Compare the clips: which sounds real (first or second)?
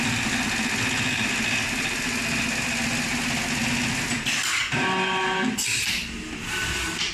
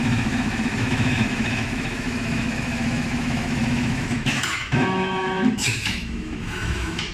first